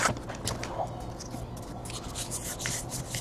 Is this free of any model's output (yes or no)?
yes